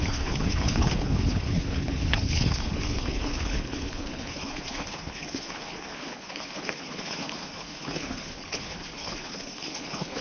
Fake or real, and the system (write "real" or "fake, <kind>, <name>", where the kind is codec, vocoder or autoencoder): fake, codec, HILCodec